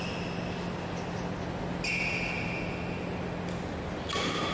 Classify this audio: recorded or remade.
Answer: recorded